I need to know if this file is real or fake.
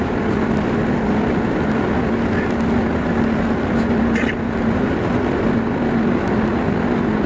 real